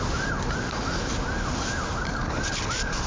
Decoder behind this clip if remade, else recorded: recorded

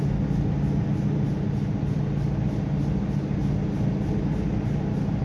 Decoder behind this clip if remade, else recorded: recorded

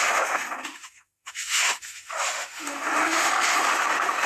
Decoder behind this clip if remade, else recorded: remade, autoencoder, DAC-VAE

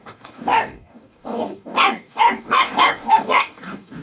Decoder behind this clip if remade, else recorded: remade, codec, DAC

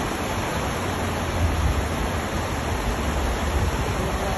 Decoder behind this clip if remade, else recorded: recorded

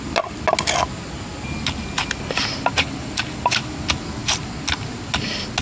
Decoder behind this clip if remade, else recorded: recorded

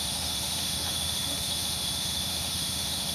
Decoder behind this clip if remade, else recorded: remade, autoencoder, DAC-VAE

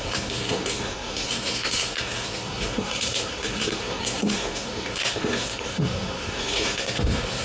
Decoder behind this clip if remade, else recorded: remade, codec, SNAC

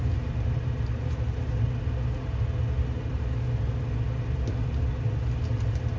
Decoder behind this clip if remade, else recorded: recorded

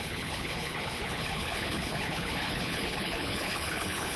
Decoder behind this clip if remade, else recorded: remade, codec, HILCodec